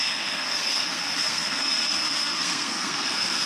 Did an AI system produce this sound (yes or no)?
yes